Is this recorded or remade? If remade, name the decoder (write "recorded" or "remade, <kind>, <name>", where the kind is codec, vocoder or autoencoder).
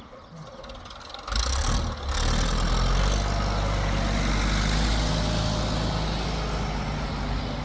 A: recorded